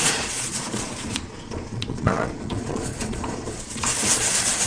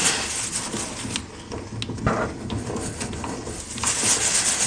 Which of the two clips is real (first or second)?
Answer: second